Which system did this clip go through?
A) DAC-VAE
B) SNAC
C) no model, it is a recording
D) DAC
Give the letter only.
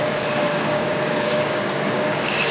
D